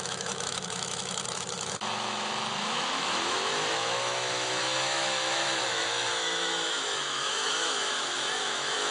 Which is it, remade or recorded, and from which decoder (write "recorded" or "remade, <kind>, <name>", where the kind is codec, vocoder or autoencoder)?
remade, autoencoder, DAC-VAE